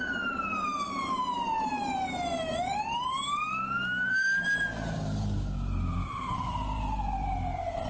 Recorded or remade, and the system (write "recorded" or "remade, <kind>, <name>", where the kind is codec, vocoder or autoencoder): remade, vocoder, BigVGAN v2